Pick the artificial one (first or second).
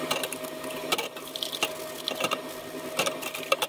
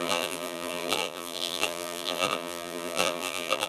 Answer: second